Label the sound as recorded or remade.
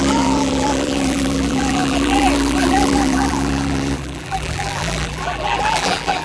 remade